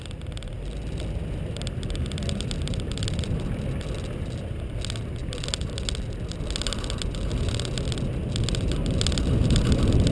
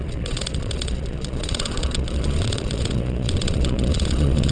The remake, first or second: second